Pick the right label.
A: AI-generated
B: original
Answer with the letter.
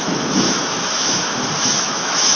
A